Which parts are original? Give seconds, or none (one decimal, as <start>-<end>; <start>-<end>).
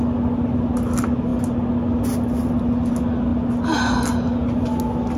0.0-5.2